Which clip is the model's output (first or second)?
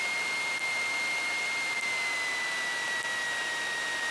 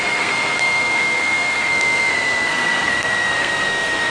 second